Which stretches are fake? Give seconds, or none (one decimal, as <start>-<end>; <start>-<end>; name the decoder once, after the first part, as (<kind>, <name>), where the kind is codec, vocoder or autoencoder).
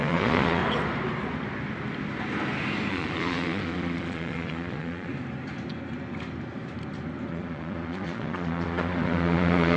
0.0-0.6 (vocoder, Vocos); 2.9-5.1; 7.3-9.8